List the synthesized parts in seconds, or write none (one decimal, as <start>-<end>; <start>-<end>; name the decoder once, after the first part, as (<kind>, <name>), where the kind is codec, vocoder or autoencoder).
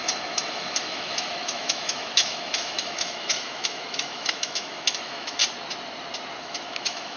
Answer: 0.0-5.4 (autoencoder, DAC-VAE); 6.4-7.2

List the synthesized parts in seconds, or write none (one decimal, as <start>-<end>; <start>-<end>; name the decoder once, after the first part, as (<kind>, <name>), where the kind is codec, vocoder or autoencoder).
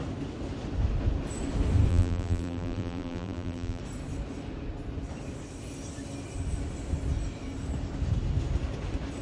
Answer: 1.9-3.8 (vocoder, BigVGAN v2)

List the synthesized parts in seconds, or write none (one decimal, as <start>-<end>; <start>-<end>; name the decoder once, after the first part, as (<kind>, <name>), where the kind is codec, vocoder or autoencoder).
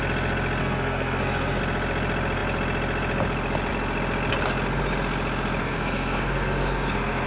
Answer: 0.6-1.6 (codec, SNAC); 5.6-7.3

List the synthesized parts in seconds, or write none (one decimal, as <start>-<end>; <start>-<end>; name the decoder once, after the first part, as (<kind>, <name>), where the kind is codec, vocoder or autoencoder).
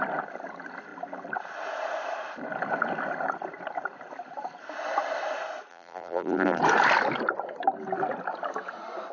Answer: 5.7-6.6 (vocoder, BigVGAN v2)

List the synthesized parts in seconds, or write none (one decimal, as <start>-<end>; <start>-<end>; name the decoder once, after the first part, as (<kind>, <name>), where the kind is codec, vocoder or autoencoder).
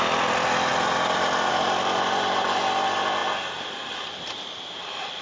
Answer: 0.0-3.2 (vocoder, BigVGAN v2); 3.9-5.2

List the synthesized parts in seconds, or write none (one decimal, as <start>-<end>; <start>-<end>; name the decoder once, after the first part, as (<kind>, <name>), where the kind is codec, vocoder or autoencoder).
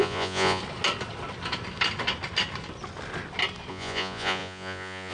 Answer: 0.0-0.6 (vocoder, Vocos); 3.7-5.1